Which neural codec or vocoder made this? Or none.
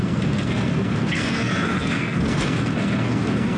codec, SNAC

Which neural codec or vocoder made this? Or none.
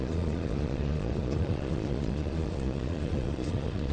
vocoder, Vocos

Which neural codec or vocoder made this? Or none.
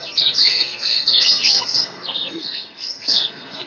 codec, SNAC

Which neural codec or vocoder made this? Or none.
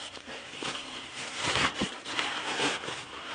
codec, SNAC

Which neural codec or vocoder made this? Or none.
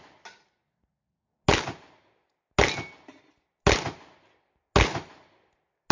none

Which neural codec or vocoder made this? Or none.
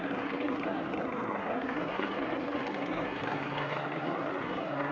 codec, SNAC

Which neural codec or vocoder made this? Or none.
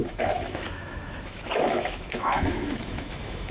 autoencoder, DAC-VAE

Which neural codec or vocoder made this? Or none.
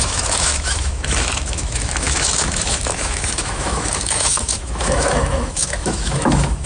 autoencoder, DAC-VAE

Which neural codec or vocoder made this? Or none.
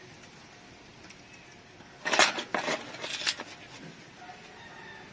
none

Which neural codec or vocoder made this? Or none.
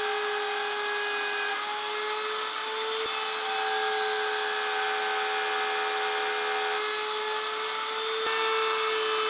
none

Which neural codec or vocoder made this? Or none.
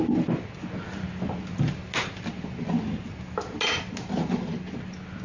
none